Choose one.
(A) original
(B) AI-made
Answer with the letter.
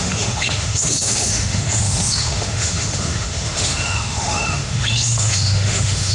B